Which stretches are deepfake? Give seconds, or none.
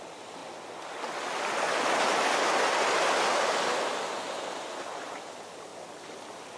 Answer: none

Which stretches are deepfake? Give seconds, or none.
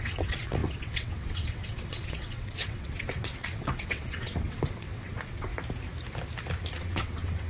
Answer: 0.0-5.5 (vocoder, WaveNeXt); 6.8-7.5